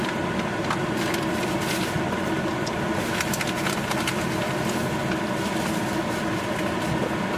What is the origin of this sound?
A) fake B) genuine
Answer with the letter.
B